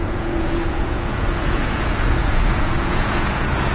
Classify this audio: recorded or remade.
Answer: remade